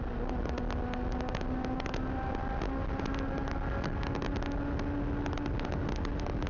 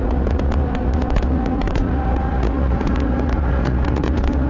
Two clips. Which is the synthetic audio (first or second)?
second